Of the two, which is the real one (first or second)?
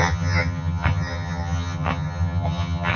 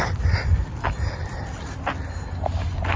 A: second